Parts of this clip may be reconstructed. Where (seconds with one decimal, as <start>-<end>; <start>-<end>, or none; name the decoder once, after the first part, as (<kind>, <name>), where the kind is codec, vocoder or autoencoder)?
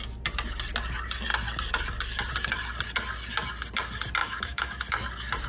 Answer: 4.2-4.9 (autoencoder, DAC-VAE)